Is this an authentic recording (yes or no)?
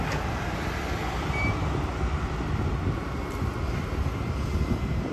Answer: yes